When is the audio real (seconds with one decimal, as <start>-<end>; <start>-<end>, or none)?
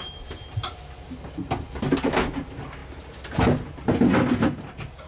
0.0-5.1